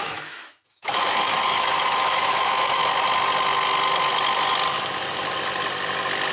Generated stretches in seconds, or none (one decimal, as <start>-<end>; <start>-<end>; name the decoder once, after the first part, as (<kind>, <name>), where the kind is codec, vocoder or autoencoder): 0.0-2.8 (autoencoder, DAC-VAE)